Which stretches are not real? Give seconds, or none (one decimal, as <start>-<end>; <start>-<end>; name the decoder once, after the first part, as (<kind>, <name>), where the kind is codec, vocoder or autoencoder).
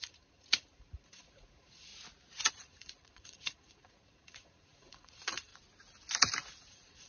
0.0-1.9 (vocoder, Vocos); 2.5-5.5; 6.6-7.1